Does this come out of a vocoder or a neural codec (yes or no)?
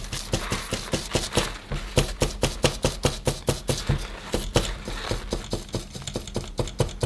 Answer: no